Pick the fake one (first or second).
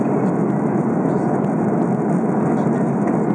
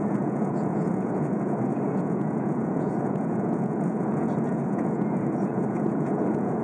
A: second